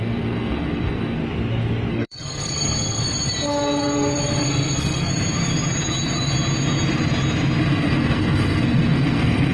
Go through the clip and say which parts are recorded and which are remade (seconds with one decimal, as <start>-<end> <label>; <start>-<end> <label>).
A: 0.0-1.2 remade; 1.2-1.9 recorded; 1.9-3.0 remade; 3.0-4.4 recorded; 4.4-5.1 remade; 5.1-7.6 recorded; 7.6-9.5 remade